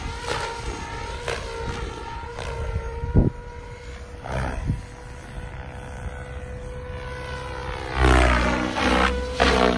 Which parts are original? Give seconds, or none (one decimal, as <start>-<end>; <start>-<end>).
0.0-9.8